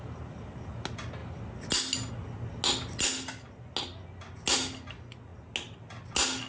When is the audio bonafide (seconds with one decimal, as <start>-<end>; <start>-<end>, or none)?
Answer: 0.0-6.5